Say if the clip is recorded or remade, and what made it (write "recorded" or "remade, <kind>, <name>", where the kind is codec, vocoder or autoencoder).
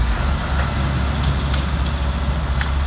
recorded